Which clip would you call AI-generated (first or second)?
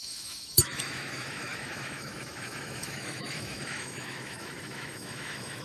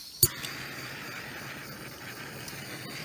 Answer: first